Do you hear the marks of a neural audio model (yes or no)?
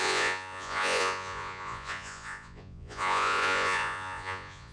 yes